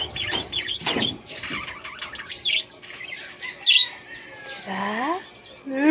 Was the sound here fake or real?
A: real